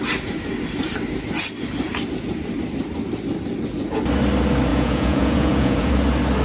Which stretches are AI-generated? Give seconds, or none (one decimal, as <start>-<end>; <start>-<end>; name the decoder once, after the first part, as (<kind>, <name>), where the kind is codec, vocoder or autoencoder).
4.7-5.9 (vocoder, Vocos)